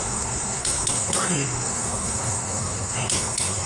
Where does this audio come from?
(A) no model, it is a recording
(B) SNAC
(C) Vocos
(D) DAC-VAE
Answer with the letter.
B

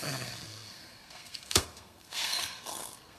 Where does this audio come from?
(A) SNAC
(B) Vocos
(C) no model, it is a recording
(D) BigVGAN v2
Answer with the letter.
A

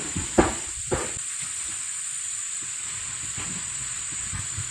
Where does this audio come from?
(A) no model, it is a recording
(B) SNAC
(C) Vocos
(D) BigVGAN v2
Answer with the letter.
A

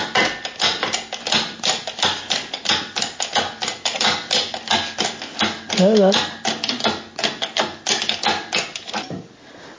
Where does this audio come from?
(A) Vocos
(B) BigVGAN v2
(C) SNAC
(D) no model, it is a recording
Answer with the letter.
D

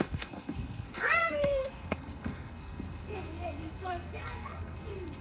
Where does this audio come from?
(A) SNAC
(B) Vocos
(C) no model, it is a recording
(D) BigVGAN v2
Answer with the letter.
A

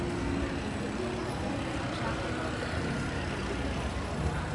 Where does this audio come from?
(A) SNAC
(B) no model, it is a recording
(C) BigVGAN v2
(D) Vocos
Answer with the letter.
B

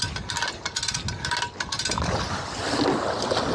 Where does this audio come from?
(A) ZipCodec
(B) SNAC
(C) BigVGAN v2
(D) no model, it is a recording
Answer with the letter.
D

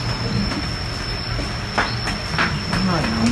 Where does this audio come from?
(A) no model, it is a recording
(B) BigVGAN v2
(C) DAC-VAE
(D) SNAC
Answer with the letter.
A